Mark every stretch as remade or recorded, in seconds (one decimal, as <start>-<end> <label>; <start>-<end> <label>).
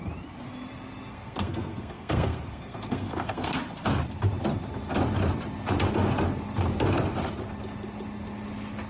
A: 0.0-1.1 recorded; 1.1-3.6 remade; 3.6-8.9 recorded